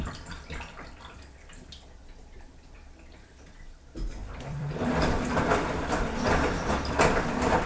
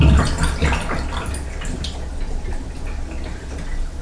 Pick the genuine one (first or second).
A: second